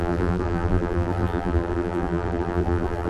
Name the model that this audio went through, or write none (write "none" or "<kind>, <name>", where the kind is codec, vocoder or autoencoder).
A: vocoder, BigVGAN v2